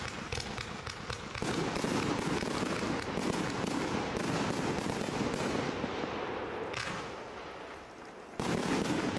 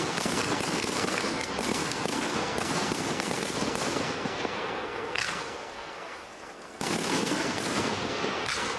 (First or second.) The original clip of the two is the first